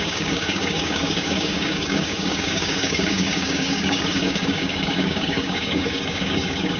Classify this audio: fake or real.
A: fake